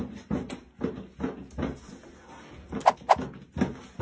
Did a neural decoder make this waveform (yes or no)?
no